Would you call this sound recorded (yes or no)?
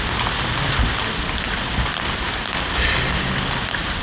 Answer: yes